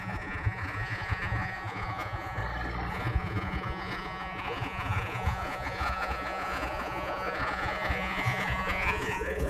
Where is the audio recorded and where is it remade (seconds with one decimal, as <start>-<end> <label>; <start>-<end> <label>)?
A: 0.0-2.4 remade; 2.4-2.9 recorded; 2.9-9.5 remade